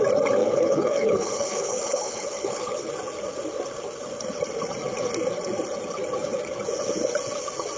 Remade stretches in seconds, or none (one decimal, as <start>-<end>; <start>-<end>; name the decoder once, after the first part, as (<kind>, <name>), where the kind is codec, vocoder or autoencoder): 0.4-2.9 (codec, HILCodec)